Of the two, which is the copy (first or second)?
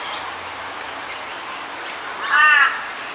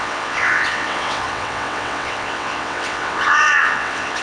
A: second